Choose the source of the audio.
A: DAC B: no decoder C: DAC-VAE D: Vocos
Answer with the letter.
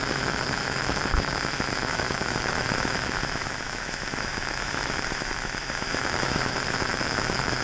C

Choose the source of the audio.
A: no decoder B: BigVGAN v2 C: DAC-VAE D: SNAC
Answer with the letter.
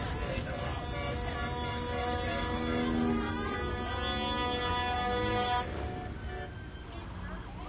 A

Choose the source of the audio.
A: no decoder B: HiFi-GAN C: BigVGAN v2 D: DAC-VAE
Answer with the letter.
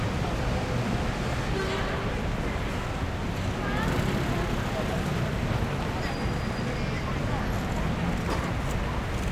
A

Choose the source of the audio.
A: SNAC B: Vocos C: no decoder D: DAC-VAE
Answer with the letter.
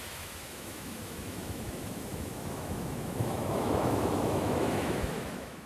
D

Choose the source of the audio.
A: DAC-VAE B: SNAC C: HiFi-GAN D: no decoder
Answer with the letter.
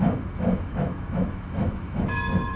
A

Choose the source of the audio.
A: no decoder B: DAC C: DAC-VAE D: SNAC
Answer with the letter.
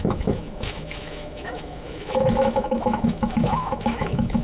C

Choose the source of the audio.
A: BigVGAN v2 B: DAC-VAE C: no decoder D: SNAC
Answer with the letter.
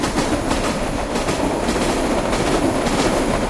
C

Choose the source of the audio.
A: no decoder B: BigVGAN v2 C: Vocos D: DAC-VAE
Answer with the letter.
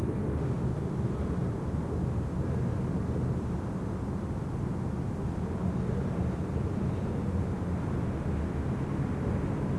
A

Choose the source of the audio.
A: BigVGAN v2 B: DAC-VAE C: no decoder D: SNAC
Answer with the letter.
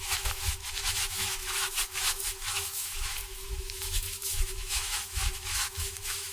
B